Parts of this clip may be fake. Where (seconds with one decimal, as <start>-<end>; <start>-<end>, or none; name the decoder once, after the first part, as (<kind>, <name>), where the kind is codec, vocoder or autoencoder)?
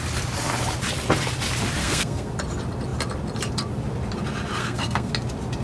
1.8-2.3 (codec, SNAC); 4.6-5.1